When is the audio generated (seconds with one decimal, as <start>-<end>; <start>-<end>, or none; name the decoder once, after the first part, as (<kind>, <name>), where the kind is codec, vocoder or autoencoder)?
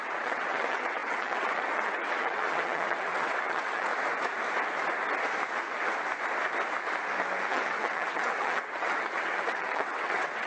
0.0-3.9 (vocoder, WaveNeXt); 7.5-10.5